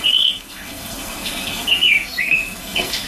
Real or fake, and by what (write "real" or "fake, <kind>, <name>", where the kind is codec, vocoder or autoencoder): fake, codec, SNAC